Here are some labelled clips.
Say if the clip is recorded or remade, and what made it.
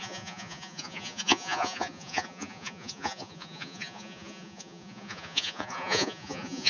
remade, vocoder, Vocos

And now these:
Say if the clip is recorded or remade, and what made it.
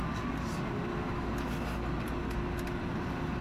recorded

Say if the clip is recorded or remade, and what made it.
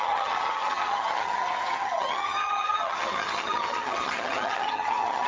remade, vocoder, HiFi-GAN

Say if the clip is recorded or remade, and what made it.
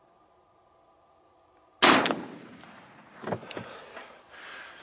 recorded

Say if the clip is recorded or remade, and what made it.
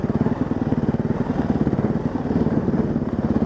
recorded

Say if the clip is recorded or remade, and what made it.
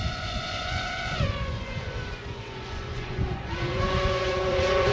remade, vocoder, Vocos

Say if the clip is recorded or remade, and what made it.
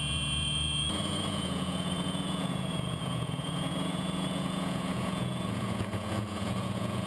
remade, vocoder, Vocos